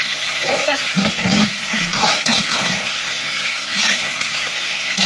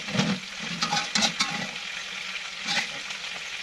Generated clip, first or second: first